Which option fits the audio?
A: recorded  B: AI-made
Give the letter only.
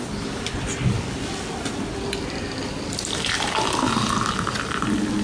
A